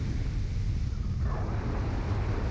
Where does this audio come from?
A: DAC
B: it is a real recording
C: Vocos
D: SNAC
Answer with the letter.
B